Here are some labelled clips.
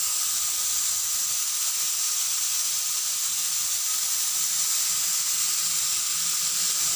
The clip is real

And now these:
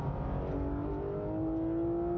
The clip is real